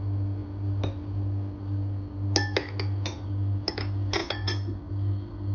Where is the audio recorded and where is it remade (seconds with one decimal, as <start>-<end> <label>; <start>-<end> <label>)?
0.0-5.5 recorded